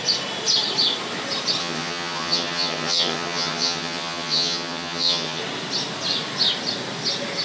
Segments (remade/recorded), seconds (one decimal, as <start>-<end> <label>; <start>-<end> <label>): 0.0-1.6 recorded; 1.6-5.4 remade; 5.4-7.4 recorded